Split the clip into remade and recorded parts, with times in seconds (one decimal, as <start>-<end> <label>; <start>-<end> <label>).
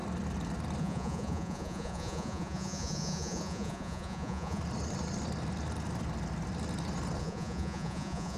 0.0-0.8 recorded; 0.8-4.6 remade; 4.6-7.2 recorded; 7.2-8.4 remade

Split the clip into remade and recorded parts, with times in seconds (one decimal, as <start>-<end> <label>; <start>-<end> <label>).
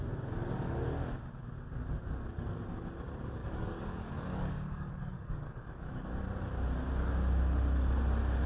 0.0-3.4 recorded; 3.4-6.2 remade; 6.2-8.5 recorded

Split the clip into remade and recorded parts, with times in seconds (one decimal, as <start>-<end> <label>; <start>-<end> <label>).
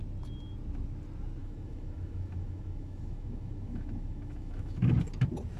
0.0-1.4 recorded; 1.4-4.8 remade; 4.8-5.6 recorded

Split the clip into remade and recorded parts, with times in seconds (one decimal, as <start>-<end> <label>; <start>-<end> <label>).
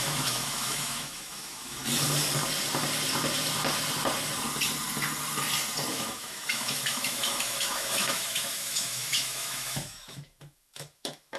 0.0-1.8 remade; 1.8-5.9 recorded; 5.9-11.4 remade